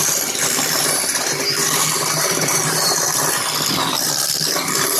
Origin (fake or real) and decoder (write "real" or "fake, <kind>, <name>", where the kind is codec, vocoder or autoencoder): fake, vocoder, BigVGAN v2